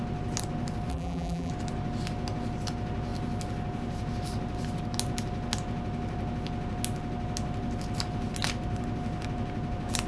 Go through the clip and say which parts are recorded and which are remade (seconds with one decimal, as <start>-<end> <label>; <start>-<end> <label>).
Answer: 0.0-0.9 recorded; 0.9-1.5 remade; 1.5-10.1 recorded